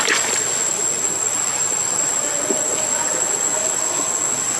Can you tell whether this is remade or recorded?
recorded